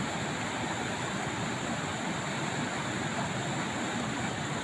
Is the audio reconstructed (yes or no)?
no